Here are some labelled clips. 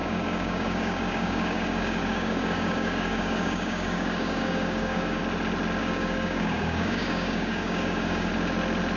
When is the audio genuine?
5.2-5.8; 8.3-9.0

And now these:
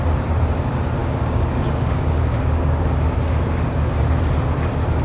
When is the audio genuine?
0.0-1.0; 4.0-5.0

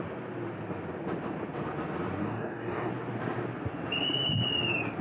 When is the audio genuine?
0.0-2.2; 2.9-5.0

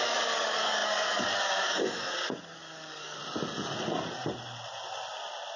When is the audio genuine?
3.2-5.6

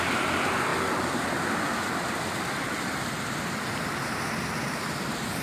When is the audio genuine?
0.0-5.4

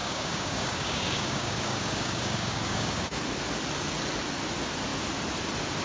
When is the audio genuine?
3.2-5.8

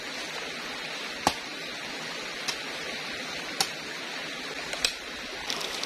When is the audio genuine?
0.0-5.9